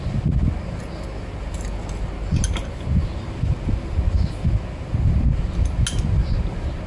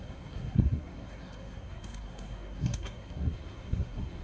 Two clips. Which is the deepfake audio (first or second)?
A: second